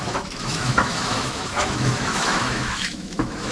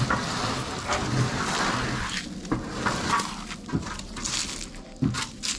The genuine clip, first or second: second